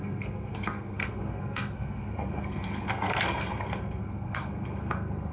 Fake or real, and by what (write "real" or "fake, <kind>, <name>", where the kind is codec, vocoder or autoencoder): fake, codec, SNAC